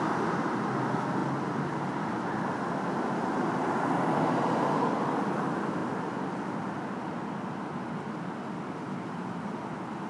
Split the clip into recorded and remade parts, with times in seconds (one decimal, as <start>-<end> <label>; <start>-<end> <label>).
0.0-10.1 recorded